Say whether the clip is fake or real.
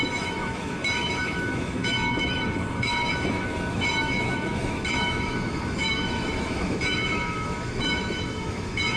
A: fake